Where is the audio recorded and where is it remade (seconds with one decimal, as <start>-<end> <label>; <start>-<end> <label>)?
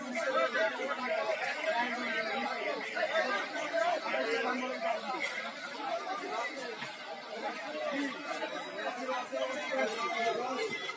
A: 0.0-11.0 recorded